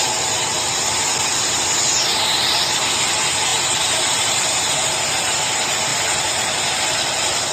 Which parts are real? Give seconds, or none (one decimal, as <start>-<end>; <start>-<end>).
0.0-3.5; 4.6-5.9; 6.6-7.5